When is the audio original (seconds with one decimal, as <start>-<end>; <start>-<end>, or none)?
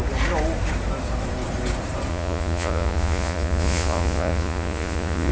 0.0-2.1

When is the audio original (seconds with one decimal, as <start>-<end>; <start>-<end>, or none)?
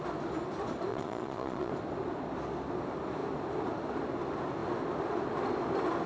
0.0-0.9; 1.7-6.1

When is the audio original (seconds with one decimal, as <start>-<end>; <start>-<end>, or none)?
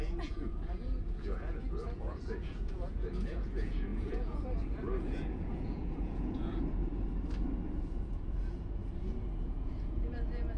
6.9-7.8; 8.8-9.4